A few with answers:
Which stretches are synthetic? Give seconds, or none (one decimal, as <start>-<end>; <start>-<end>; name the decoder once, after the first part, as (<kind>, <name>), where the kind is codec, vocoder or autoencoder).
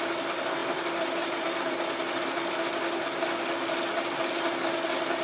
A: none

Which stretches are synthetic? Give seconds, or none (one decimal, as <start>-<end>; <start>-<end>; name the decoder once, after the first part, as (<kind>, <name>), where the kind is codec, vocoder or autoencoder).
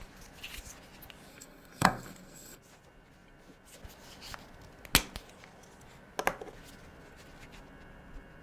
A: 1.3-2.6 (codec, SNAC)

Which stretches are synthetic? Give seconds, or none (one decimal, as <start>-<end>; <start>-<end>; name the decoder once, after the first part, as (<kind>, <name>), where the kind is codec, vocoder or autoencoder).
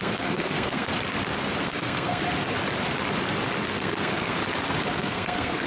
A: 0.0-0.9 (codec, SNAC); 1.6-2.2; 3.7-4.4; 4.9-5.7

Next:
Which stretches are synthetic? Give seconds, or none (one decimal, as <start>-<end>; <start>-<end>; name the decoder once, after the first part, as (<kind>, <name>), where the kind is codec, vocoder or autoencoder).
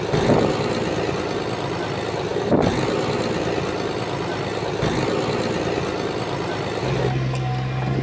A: none